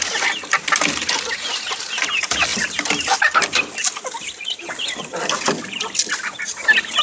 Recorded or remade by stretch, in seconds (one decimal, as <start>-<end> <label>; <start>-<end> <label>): 0.0-7.0 recorded